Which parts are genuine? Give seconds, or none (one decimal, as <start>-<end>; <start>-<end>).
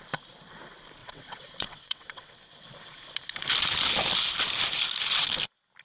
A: 0.0-1.0; 2.3-5.8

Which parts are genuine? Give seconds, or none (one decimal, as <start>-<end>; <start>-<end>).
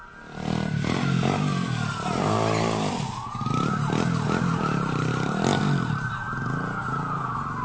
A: 0.0-4.5; 5.1-7.6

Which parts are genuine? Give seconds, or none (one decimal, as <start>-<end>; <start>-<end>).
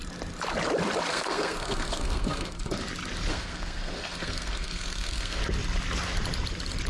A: 0.0-1.1; 2.8-3.3; 5.4-6.9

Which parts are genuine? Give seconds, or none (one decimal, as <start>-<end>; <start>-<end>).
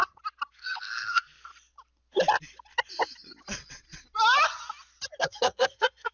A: 0.0-0.5; 1.5-5.2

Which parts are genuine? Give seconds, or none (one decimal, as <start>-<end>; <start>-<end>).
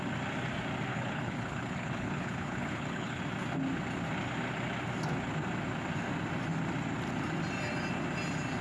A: 0.0-0.9; 3.2-8.6